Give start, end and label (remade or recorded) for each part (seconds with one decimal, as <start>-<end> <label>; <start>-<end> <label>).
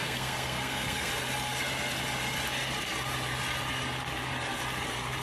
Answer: 0.0-1.1 remade; 1.1-5.2 recorded